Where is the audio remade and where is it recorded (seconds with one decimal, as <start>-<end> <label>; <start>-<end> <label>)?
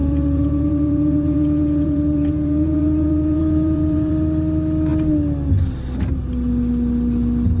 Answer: 0.0-4.1 remade; 4.1-7.6 recorded